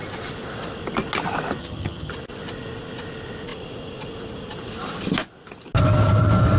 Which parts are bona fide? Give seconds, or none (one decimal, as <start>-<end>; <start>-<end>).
0.0-1.6; 2.1-6.6